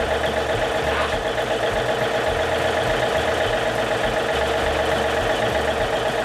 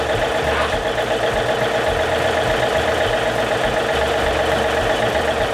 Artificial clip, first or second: second